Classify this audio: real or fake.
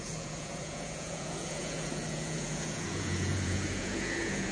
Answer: fake